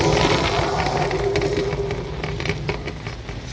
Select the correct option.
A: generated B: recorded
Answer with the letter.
B